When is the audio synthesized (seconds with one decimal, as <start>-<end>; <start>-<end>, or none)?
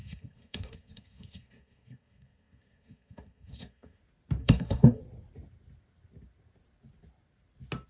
0.0-4.0; 4.4-5.0